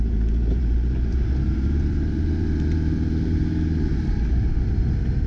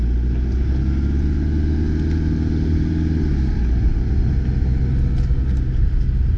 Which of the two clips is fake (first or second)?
first